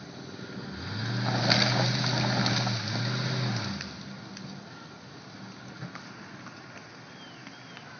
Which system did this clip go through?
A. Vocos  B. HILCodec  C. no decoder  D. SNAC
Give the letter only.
C